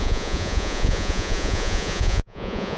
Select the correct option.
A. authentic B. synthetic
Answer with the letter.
B